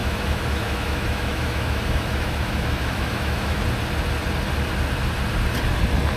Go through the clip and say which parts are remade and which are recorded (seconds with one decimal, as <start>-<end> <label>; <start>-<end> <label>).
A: 0.0-3.6 remade; 3.6-6.2 recorded